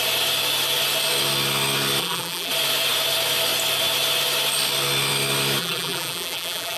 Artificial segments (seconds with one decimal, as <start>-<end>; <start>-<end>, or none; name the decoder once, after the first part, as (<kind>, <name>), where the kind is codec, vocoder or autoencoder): 2.0-2.5 (vocoder, BigVGAN v2); 5.6-6.8